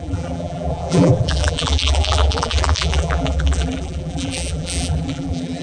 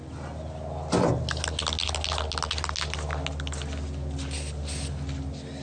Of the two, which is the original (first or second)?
second